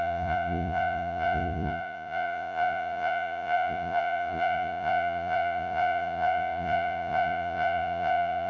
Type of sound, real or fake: fake